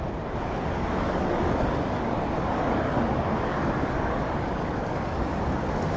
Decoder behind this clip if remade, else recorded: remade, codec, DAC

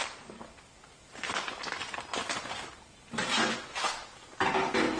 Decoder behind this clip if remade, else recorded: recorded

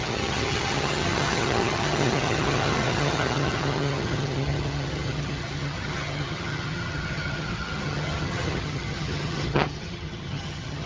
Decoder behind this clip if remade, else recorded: remade, vocoder, HiFi-GAN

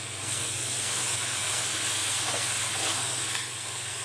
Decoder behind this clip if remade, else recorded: remade, codec, SNAC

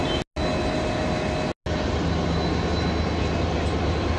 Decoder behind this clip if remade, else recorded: recorded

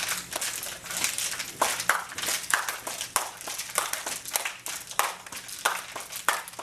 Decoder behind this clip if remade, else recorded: recorded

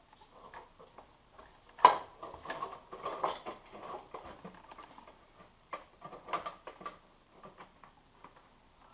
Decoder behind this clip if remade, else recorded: recorded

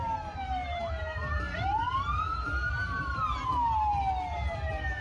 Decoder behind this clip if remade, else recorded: remade, vocoder, BigVGAN v2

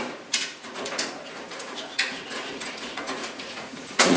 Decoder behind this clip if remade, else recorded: remade, vocoder, Vocos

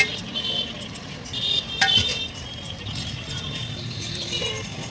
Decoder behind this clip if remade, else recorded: recorded